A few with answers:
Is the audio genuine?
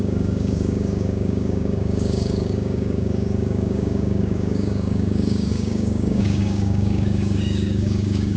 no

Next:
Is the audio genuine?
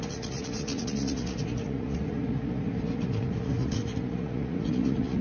no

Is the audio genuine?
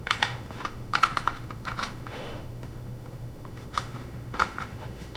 no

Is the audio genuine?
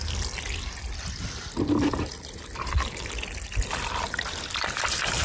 yes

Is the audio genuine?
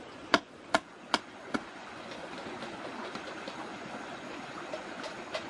no